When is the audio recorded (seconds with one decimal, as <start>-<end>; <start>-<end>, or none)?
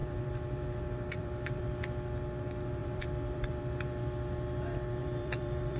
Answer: 1.6-2.8; 3.6-5.0